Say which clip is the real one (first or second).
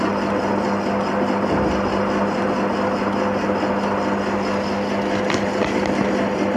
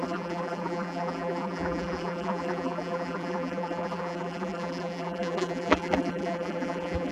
first